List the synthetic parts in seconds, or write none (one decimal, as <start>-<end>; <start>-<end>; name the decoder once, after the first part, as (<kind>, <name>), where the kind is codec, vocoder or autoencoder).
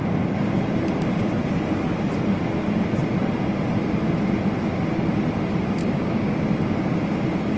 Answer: 5.8-6.4 (codec, DAC)